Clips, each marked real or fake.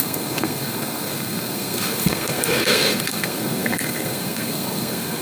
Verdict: fake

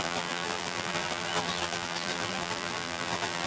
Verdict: fake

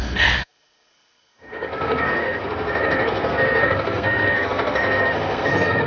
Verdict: fake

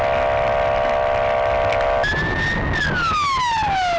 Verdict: real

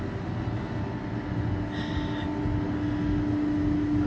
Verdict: real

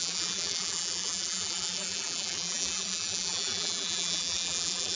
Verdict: fake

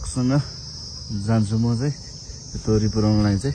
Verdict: real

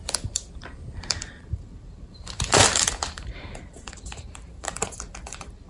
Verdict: fake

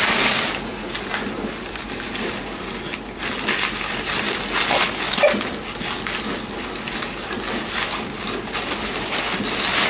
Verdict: real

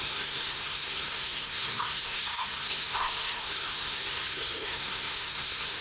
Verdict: fake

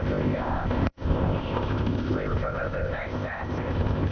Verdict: fake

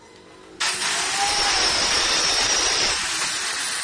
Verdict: real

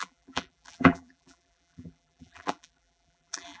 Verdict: fake